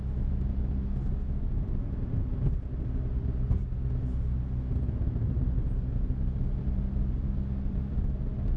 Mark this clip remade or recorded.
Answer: recorded